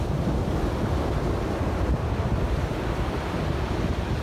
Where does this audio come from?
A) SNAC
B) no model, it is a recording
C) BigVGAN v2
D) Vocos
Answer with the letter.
B